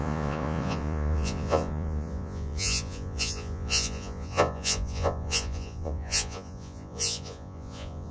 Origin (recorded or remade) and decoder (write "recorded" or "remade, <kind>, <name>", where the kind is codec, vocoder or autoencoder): remade, vocoder, Vocos